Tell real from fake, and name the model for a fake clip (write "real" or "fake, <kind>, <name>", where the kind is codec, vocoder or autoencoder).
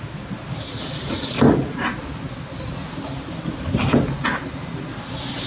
real